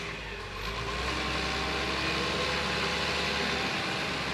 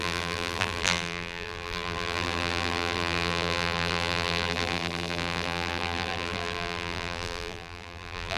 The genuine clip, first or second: first